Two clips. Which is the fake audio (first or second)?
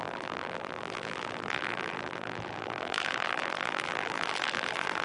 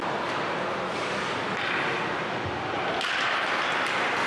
first